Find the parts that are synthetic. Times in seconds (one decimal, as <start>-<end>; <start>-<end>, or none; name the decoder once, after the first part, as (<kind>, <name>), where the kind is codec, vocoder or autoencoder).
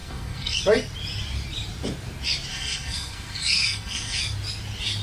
0.0-0.6 (codec, SNAC); 2.5-4.2